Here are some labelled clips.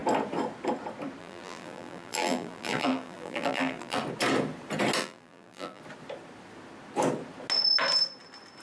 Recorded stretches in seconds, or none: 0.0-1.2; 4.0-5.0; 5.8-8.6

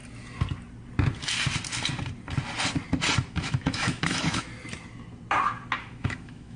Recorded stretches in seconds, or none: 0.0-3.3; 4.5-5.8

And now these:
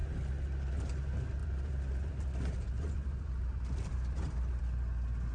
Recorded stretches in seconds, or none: 0.0-1.4; 4.6-5.3